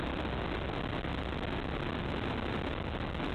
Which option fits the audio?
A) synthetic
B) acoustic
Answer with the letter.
B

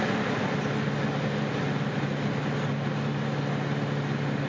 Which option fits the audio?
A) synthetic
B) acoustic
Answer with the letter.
B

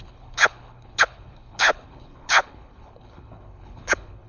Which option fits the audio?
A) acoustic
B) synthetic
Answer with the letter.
B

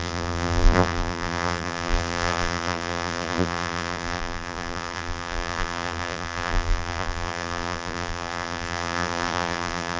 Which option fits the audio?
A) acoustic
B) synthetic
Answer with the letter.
B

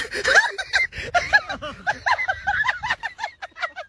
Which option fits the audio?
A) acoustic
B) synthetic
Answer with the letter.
A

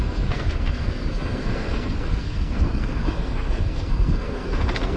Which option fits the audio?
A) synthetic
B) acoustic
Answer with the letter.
A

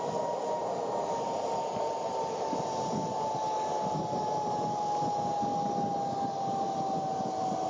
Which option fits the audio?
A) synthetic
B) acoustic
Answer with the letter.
B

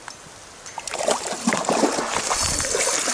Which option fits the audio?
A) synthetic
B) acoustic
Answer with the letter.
B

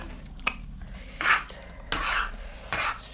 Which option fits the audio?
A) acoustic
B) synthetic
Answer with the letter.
A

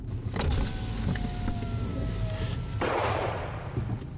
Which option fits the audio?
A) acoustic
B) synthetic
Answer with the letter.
A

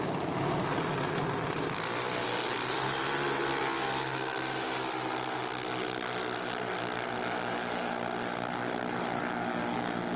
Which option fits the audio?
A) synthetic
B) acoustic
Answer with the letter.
B